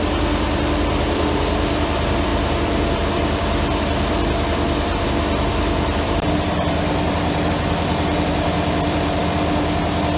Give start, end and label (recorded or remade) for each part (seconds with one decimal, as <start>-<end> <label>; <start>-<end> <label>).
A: 0.0-9.2 remade; 9.2-10.2 recorded